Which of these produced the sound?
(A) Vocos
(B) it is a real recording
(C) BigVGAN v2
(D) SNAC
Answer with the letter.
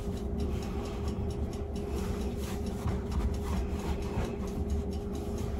B